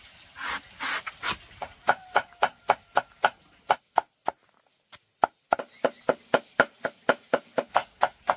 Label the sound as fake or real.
real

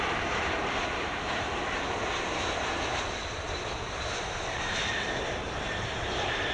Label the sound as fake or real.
fake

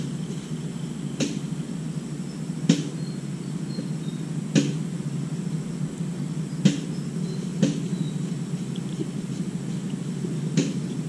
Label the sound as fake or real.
real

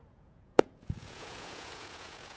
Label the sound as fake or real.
fake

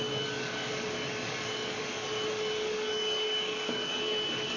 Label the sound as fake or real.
fake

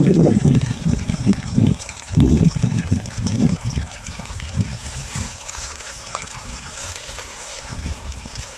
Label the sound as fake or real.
fake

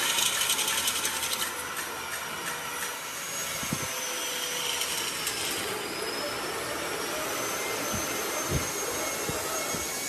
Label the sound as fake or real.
real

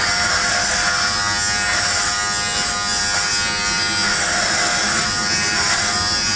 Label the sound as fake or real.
real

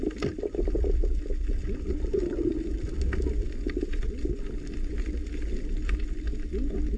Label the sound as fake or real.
real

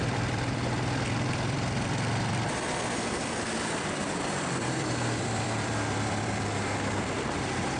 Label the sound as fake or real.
fake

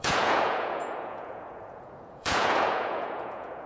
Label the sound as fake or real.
fake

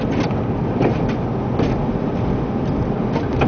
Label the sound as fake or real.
real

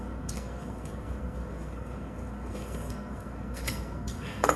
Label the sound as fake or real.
fake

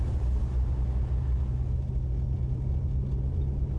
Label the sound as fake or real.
real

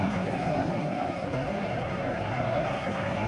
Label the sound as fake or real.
fake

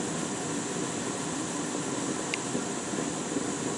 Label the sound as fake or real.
real